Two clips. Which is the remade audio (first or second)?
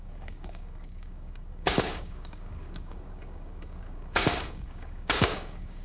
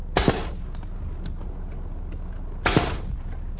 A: first